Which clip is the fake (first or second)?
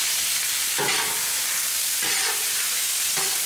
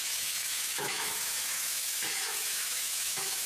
second